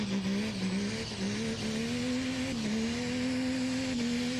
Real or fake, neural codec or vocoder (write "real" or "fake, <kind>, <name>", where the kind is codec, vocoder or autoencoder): real